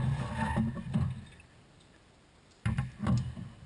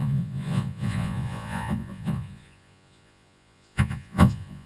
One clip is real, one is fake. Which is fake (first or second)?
second